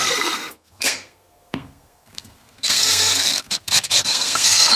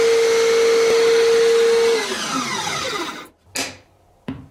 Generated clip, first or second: first